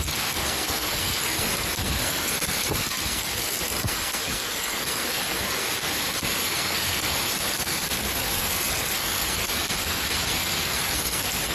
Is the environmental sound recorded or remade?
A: remade